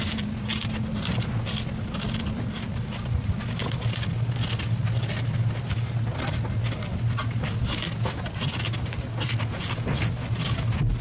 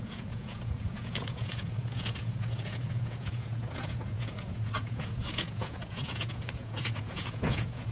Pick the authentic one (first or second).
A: first